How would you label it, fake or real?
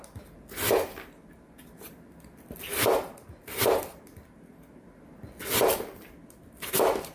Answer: real